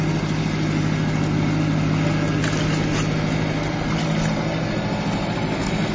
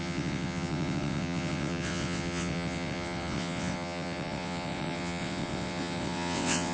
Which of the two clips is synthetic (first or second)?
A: second